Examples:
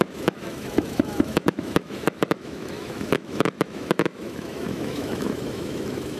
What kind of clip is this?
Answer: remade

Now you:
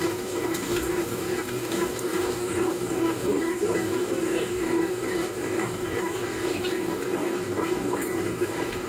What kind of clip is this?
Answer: remade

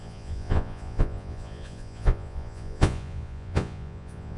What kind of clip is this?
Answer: remade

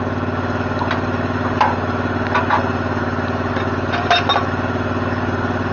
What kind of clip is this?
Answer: recorded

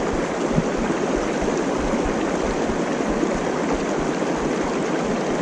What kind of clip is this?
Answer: recorded